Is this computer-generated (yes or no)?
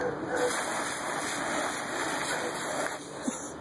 no